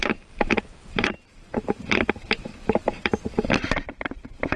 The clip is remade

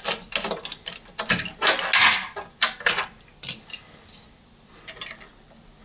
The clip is recorded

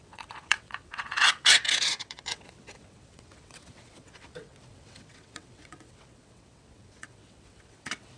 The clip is remade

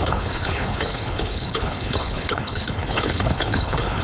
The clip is remade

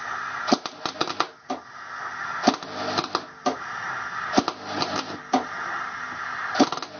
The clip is recorded